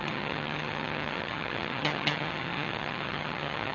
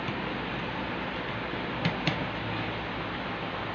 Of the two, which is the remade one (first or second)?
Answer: first